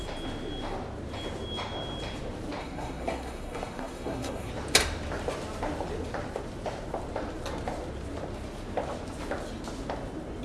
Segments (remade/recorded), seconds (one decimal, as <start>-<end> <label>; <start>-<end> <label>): 0.0-2.6 recorded; 2.6-4.5 remade; 4.5-10.4 recorded